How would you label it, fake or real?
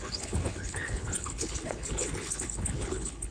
fake